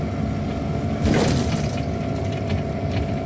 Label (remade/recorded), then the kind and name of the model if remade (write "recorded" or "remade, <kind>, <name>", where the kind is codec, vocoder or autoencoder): recorded